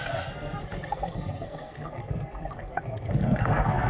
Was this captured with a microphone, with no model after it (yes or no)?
no